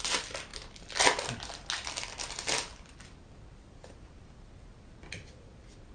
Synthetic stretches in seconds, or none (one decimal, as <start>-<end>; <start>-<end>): none